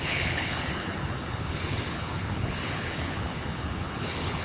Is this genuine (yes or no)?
no